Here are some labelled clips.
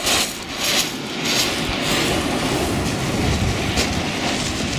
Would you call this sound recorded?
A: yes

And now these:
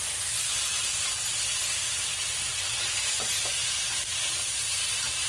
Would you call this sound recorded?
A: yes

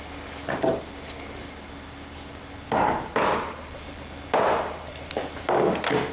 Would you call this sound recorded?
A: yes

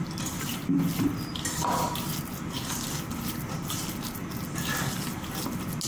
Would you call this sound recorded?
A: yes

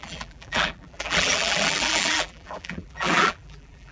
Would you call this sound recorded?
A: no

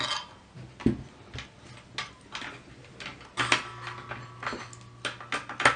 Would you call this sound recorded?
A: yes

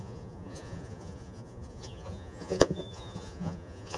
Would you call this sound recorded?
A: no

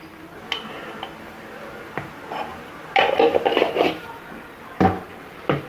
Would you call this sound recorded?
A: yes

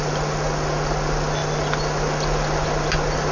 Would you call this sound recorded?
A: yes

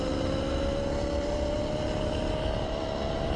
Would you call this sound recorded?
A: yes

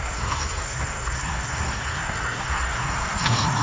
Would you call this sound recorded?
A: no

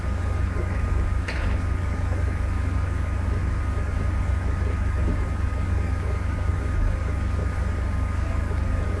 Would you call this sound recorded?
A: no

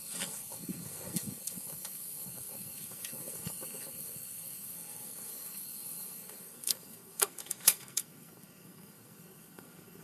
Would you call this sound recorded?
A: no